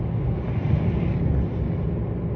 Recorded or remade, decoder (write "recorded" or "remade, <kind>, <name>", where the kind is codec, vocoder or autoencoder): recorded